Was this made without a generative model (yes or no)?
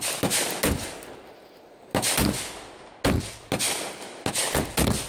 yes